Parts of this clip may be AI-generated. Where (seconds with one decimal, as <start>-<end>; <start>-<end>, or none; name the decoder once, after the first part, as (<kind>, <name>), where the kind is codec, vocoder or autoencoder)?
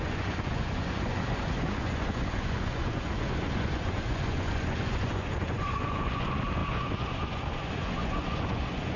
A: 0.0-9.0 (vocoder, Vocos)